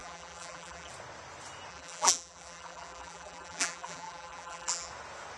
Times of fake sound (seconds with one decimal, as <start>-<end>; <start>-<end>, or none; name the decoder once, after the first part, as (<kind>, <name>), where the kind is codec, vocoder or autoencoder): 0.0-0.9 (vocoder, BigVGAN v2); 1.7-4.9